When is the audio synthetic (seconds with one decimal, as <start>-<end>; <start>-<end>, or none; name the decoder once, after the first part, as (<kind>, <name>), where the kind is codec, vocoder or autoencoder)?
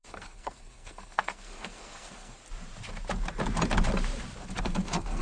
0.0-2.4 (codec, SNAC); 4.6-5.2